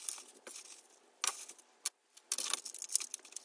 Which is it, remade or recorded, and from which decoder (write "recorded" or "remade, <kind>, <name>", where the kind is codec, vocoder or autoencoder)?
recorded